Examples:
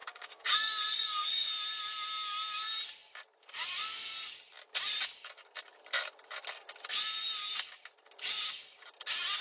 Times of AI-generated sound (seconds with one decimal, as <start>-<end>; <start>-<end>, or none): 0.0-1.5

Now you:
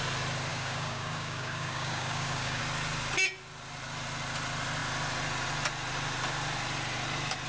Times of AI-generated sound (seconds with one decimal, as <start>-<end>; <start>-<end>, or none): 0.5-2.6

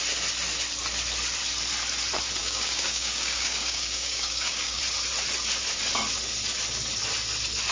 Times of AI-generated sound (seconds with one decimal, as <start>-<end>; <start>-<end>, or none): 2.4-4.8

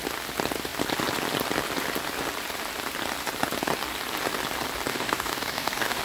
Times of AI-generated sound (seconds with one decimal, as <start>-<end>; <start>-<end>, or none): 4.9-6.0